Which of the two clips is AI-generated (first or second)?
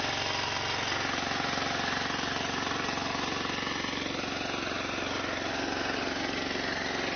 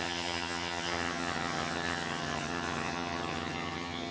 second